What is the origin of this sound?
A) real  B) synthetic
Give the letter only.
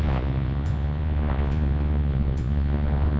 B